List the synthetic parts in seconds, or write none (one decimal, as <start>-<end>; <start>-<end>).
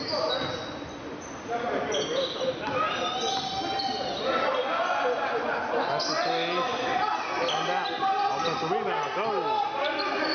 none